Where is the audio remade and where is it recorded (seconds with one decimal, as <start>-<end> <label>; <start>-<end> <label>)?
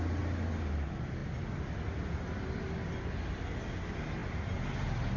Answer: 0.0-5.2 recorded